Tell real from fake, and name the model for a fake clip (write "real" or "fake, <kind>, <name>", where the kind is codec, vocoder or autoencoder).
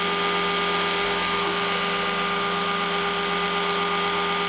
real